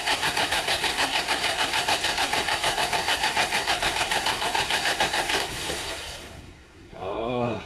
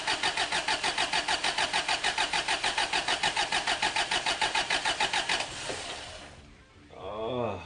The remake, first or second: first